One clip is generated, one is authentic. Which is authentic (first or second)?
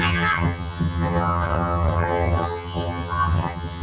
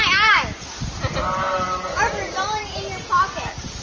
second